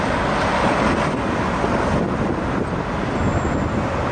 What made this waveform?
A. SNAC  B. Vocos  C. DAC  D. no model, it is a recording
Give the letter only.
D